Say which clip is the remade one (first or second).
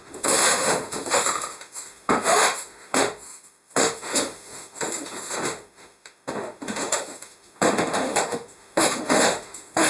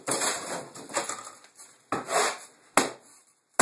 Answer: first